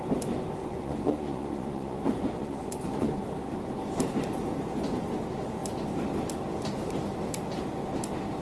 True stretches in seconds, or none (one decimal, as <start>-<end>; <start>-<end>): 0.0-0.6; 3.2-8.4